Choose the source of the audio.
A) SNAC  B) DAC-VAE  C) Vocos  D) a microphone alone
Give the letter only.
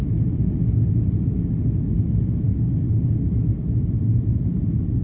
D